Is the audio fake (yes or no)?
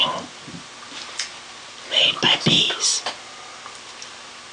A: no